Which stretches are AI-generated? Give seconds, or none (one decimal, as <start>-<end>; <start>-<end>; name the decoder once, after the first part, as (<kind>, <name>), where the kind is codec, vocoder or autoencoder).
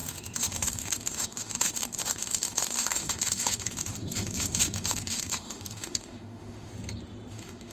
0.0-6.7 (autoencoder, DAC-VAE); 7.3-7.7